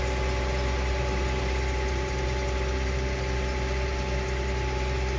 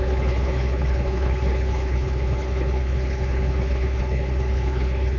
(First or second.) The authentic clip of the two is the first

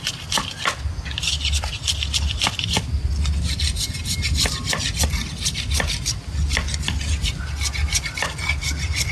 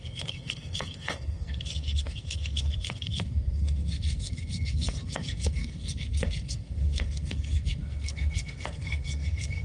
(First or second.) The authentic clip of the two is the first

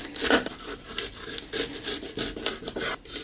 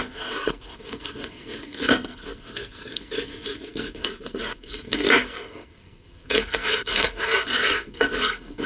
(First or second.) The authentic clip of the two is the first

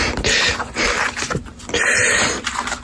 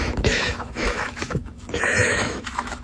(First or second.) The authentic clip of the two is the first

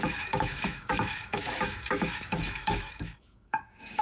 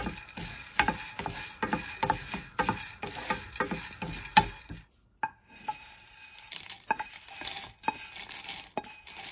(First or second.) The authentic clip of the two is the second